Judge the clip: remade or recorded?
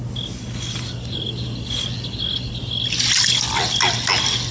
recorded